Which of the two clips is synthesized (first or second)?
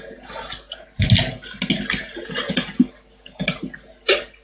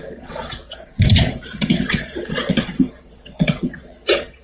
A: second